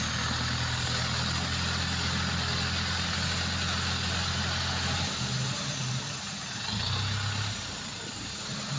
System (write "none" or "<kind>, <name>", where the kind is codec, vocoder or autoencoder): none